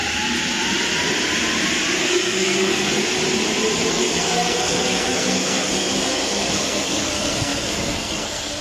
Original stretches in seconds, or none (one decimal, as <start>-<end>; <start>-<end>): 0.0-2.0; 3.0-3.9